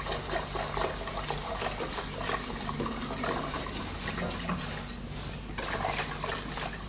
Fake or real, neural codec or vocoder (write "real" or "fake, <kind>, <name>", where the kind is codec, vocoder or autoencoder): real